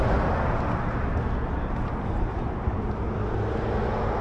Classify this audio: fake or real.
real